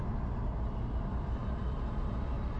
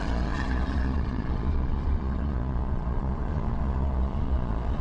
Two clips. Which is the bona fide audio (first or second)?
first